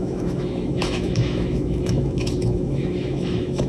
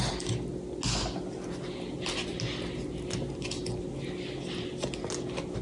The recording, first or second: second